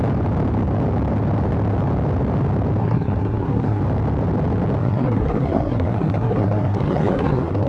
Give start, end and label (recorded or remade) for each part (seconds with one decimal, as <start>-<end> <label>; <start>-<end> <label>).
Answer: 0.0-2.8 recorded; 2.8-3.8 remade; 3.8-4.8 recorded; 4.8-7.7 remade